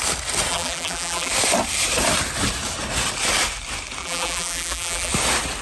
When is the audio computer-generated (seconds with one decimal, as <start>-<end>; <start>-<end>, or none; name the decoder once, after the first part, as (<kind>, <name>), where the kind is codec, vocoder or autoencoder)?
0.5-1.3 (vocoder, BigVGAN v2); 4.0-5.1